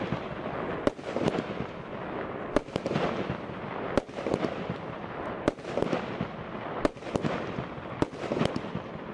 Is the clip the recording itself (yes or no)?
yes